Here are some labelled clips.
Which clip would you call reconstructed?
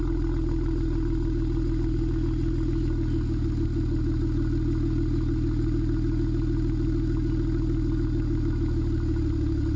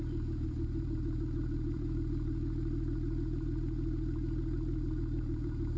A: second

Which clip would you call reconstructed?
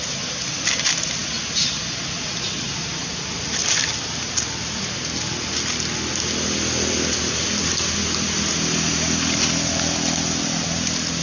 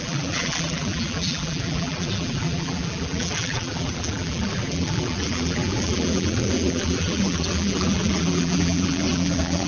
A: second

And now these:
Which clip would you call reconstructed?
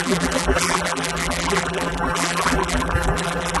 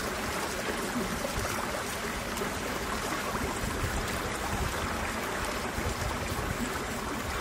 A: first